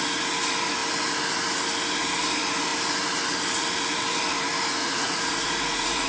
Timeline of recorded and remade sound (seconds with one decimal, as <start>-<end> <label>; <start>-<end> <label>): 0.0-4.8 recorded; 4.8-6.1 remade